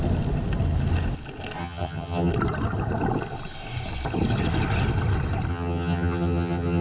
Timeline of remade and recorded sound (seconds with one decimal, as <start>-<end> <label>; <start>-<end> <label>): 0.0-1.6 recorded; 1.6-2.3 remade; 2.3-5.5 recorded; 5.5-6.8 remade